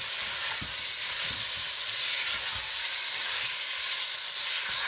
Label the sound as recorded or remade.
recorded